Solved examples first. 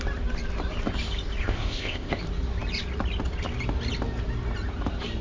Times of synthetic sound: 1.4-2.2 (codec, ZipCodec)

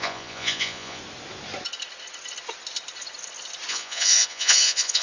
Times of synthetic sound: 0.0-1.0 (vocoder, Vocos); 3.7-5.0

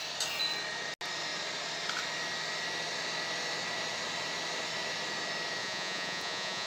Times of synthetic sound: 5.6-6.7 (vocoder, Vocos)